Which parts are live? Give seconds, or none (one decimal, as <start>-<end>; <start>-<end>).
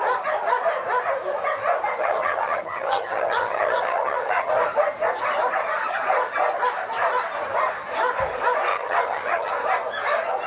0.0-2.0; 4.5-8.7; 9.5-10.5